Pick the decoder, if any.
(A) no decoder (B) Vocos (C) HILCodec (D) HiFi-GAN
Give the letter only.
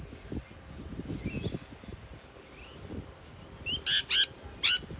A